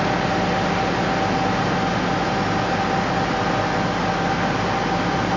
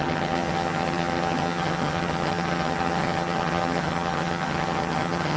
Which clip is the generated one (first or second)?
second